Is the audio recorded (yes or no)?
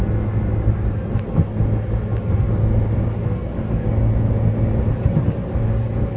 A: yes